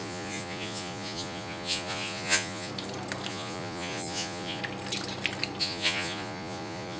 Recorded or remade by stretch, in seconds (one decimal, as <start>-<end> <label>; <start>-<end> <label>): 0.0-2.7 remade; 2.7-3.3 recorded; 3.3-4.6 remade; 4.6-5.6 recorded; 5.6-7.0 remade